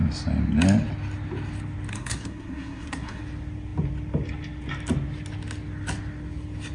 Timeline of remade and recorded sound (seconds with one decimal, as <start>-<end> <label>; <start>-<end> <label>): 0.0-1.9 recorded; 1.9-3.2 remade; 3.2-6.7 recorded